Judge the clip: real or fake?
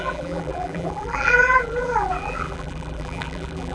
fake